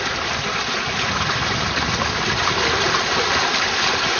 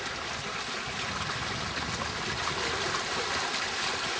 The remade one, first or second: first